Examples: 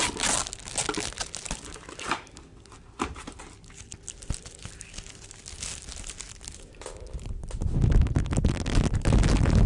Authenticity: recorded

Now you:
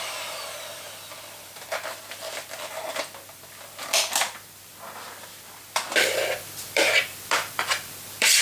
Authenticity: remade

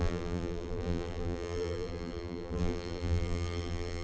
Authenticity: remade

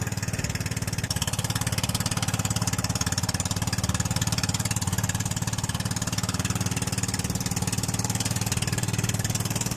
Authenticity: remade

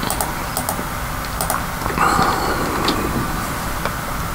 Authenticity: recorded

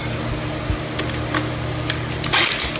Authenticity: recorded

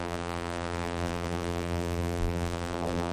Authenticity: remade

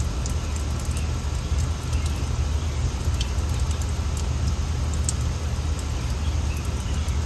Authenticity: recorded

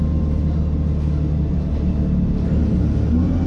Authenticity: recorded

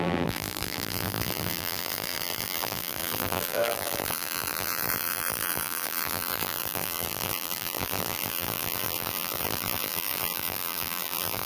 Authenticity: remade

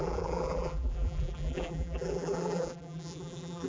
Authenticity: remade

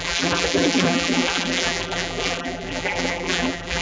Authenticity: remade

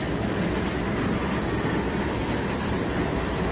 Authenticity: recorded